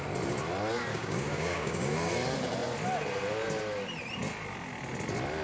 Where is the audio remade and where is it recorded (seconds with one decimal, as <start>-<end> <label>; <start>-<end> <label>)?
0.0-0.9 recorded; 0.9-2.1 remade; 2.1-5.4 recorded